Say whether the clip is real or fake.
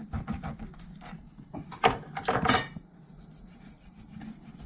real